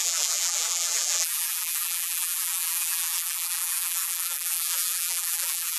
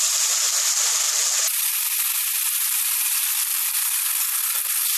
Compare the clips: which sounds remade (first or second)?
first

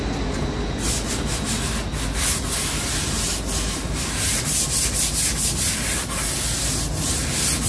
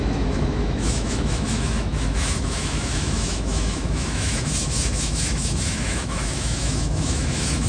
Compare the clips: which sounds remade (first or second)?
second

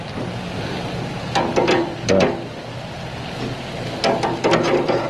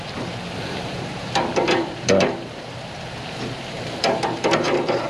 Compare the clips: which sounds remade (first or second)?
second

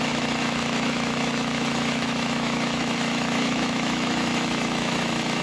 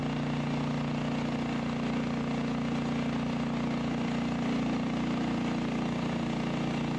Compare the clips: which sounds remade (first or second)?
first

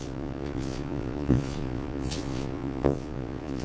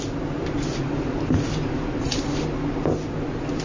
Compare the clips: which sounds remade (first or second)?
first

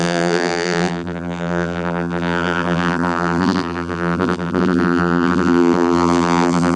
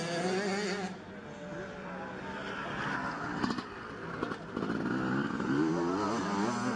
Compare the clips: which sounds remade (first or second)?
first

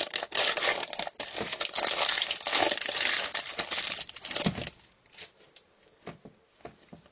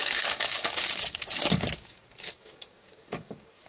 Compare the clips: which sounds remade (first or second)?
second